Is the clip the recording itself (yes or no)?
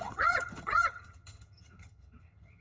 no